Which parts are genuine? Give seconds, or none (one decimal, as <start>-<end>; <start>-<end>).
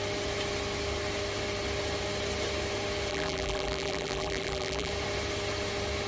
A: 0.0-3.1; 4.9-6.1